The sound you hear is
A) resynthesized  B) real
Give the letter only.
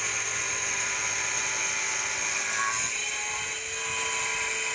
B